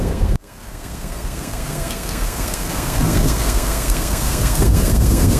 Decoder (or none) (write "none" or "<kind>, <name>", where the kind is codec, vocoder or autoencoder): codec, SNAC